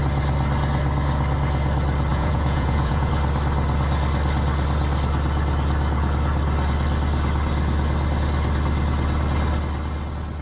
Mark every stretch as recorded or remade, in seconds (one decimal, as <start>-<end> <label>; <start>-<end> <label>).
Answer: 0.0-2.1 recorded; 2.1-3.1 remade; 3.1-10.4 recorded